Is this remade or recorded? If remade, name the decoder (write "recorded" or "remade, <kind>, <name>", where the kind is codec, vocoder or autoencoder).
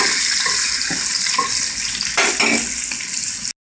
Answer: recorded